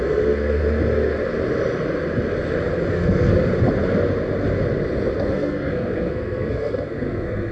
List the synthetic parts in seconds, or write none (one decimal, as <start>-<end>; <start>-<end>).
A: 0.0-0.6; 2.9-3.3; 5.2-7.5